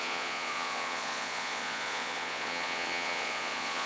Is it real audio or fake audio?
fake